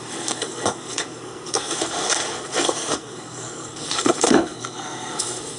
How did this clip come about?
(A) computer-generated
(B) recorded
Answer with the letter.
A